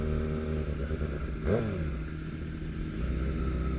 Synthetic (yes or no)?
no